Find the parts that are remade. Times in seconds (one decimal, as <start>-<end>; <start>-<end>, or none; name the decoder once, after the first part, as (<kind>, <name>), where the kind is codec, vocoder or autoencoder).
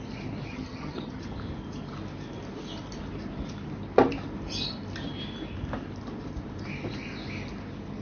0.5-1.2 (vocoder, HiFi-GAN)